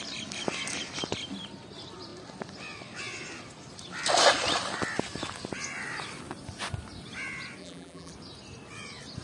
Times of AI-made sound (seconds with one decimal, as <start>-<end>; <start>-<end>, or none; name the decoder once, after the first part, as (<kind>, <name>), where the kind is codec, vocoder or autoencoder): 7.6-8.1 (vocoder, BigVGAN v2)